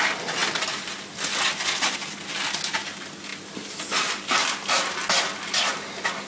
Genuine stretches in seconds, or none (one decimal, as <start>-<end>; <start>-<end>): 0.0-6.3